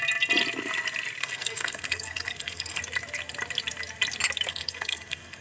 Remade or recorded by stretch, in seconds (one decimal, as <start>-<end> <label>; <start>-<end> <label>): 0.0-1.2 recorded; 1.2-2.8 remade; 2.8-4.5 recorded; 4.5-5.4 remade